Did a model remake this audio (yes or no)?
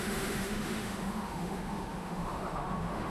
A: yes